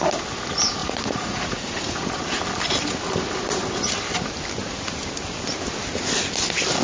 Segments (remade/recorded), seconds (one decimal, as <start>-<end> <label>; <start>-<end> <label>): 0.0-0.8 recorded; 0.8-2.0 remade; 2.0-6.8 recorded